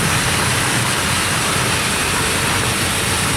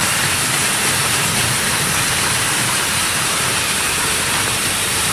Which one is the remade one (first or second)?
second